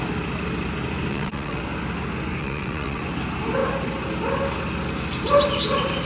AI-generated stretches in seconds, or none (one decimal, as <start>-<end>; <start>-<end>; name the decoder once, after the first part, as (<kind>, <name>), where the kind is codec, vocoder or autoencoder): 1.1-1.6 (vocoder, WaveNeXt); 2.4-3.0

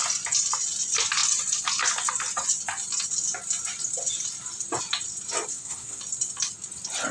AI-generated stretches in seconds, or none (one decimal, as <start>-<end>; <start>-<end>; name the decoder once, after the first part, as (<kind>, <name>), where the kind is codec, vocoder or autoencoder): 5.5-6.0 (codec, SNAC)